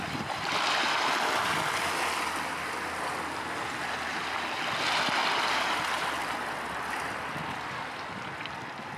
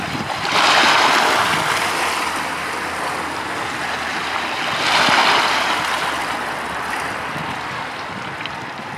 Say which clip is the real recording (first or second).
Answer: first